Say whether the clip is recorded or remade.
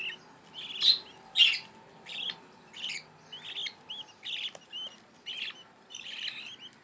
recorded